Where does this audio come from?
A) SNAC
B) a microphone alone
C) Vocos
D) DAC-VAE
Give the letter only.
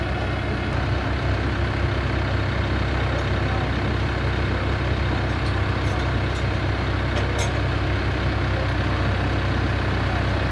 B